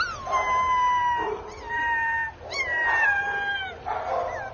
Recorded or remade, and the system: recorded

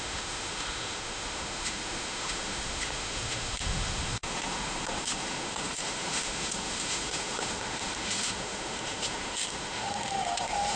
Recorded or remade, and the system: remade, autoencoder, DAC-VAE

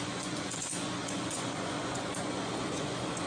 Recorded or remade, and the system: remade, vocoder, Vocos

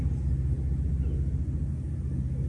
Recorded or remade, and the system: recorded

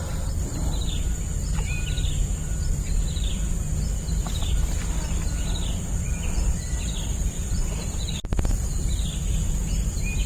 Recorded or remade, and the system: recorded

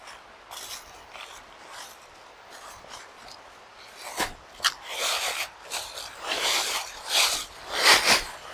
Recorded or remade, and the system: recorded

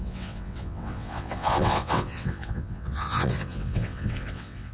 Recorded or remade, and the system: remade, vocoder, WaveNeXt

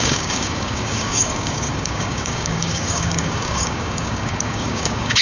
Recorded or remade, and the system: remade, codec, DAC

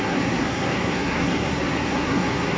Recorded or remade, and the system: remade, codec, SNAC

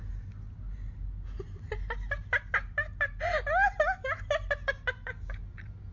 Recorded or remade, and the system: recorded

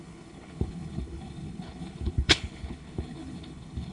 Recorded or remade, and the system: remade, codec, HILCodec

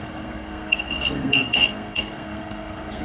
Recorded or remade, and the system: remade, codec, SNAC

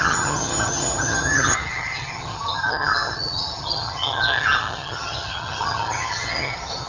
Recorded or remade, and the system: remade, vocoder, HiFi-GAN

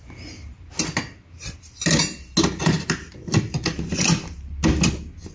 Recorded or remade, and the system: recorded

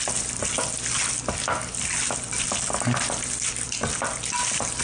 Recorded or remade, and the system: recorded